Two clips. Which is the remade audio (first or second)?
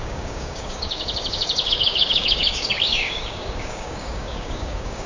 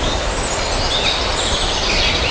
first